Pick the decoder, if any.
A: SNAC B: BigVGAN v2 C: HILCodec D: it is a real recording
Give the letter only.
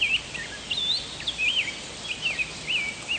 B